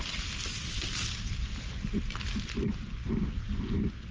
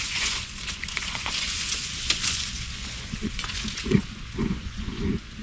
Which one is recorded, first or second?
first